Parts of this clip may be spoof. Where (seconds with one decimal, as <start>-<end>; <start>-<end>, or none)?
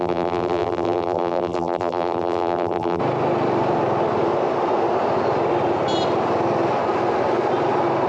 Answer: 0.0-3.0